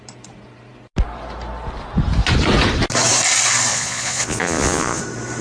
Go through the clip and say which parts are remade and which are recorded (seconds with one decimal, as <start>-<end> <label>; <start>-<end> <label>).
0.0-3.7 recorded; 3.7-5.0 remade; 5.0-5.4 recorded